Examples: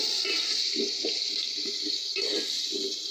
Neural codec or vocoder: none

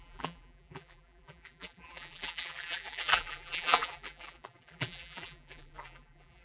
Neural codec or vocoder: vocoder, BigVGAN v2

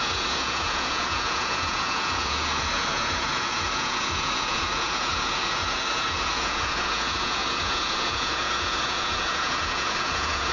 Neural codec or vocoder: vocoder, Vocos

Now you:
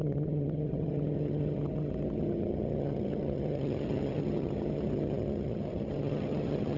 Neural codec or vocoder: vocoder, HiFi-GAN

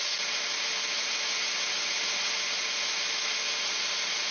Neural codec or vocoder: none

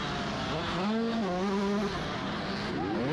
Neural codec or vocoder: none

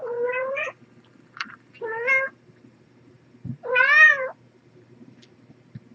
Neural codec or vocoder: vocoder, BigVGAN v2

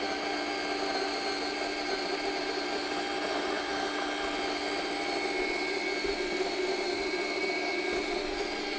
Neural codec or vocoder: none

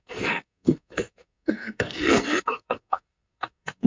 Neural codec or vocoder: codec, SNAC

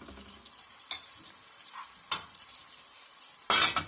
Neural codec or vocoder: none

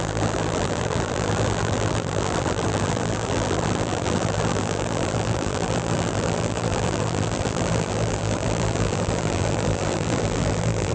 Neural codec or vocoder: vocoder, BigVGAN v2